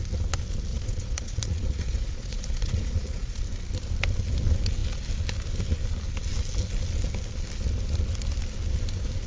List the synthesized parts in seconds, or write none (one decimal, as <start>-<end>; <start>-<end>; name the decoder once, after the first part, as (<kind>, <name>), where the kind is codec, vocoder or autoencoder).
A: 0.7-3.4 (vocoder, Vocos)